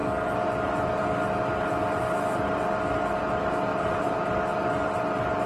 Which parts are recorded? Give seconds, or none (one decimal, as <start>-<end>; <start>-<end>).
0.0-3.7; 4.4-5.5